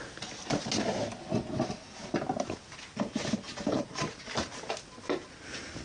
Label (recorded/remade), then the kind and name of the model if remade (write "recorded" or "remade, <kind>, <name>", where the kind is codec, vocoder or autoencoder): recorded